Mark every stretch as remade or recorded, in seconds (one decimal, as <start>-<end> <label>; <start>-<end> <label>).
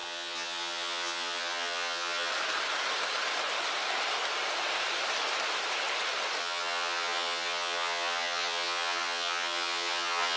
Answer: 0.0-2.3 remade; 2.3-6.4 recorded; 6.4-10.4 remade